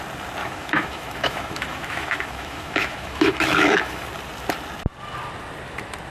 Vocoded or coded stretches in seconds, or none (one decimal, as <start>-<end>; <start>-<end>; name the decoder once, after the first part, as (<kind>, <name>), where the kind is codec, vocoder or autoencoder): 0.4-4.1 (autoencoder, DAC-VAE)